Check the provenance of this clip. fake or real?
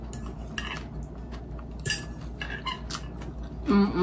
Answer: real